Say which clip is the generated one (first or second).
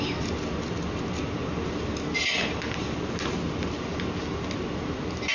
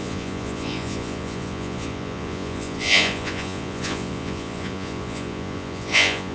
second